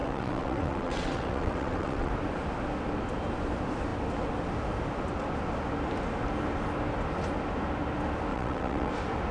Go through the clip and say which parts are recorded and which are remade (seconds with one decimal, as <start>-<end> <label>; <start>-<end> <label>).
0.0-2.1 remade; 2.1-8.3 recorded; 8.3-8.9 remade; 8.9-9.3 recorded